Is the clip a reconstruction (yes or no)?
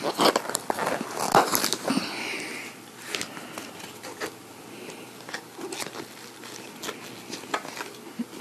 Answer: no